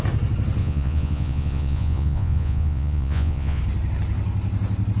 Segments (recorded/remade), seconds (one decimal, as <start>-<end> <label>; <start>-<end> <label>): 0.0-0.6 recorded; 0.6-3.6 remade; 3.6-5.0 recorded